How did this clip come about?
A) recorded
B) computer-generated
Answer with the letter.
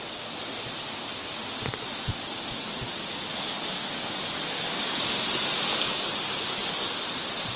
A